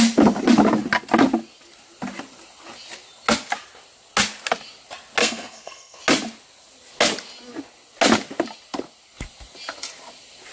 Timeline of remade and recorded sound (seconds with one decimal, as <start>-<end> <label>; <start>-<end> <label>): 0.0-5.2 recorded; 5.2-6.0 remade; 6.0-10.5 recorded